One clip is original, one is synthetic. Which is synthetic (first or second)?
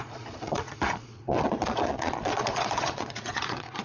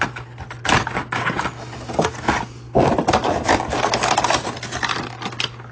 first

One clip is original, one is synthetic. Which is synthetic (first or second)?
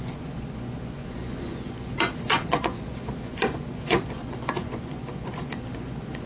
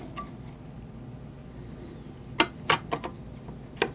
first